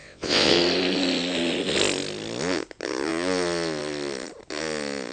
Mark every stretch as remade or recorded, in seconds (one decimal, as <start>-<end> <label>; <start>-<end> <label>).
0.0-0.6 remade; 0.6-5.1 recorded